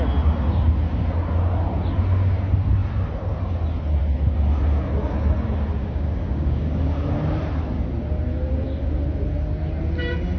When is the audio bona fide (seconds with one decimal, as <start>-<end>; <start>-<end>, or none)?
0.0-5.8; 6.8-10.4